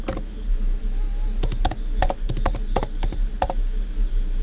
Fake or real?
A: real